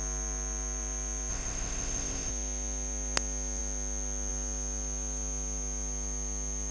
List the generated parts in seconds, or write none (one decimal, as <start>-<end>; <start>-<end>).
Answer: 1.3-2.3